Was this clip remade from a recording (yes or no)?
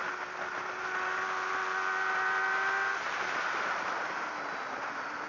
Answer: no